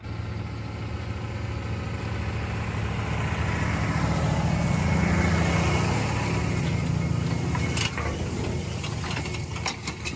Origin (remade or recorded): recorded